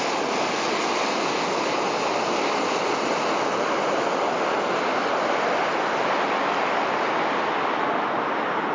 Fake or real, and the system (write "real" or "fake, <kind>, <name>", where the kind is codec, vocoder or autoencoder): real